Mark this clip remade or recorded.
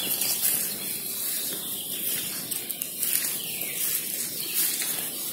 recorded